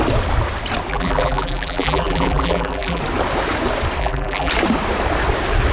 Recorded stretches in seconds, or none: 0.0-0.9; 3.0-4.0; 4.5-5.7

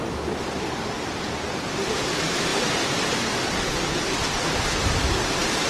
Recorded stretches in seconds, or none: none

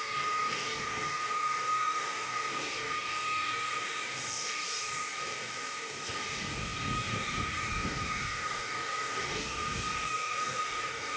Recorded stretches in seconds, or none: none

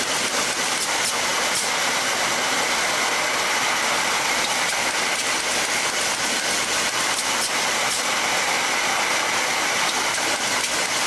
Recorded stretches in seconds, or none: 0.0-11.1

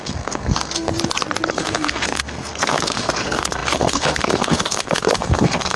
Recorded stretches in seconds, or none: 0.9-1.5

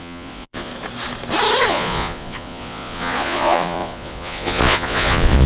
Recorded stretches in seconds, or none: 0.7-1.7

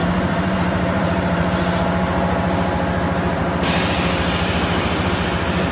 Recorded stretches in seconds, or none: 1.8-5.7

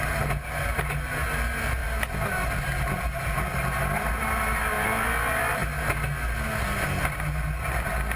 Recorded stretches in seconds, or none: 0.0-8.2